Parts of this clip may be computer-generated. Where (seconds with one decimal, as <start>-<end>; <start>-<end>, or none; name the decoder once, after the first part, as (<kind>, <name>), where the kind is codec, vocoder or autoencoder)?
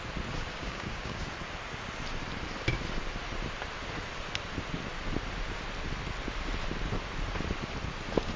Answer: 0.6-1.2 (codec, DAC)